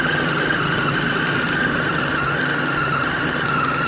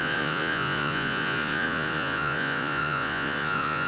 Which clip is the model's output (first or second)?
second